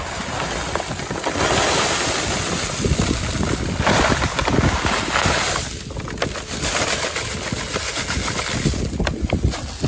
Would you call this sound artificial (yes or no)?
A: no